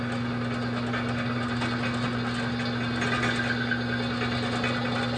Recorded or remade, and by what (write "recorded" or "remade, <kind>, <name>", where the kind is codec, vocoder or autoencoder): recorded